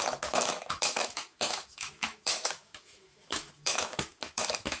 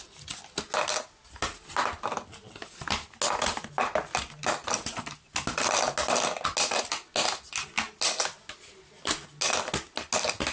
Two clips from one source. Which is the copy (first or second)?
first